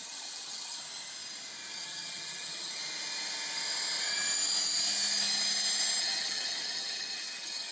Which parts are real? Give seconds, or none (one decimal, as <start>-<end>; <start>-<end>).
0.8-1.7; 2.8-6.0